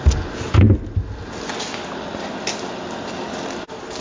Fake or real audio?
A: real